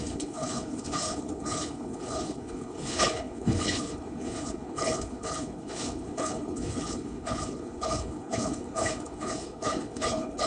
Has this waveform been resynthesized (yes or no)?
yes